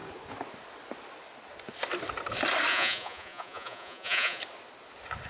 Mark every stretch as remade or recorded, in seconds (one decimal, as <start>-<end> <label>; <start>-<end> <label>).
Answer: 0.0-2.7 recorded; 2.7-4.4 remade; 4.4-5.3 recorded